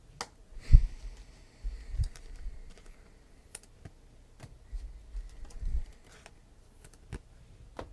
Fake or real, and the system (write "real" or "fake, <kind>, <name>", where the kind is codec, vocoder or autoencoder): real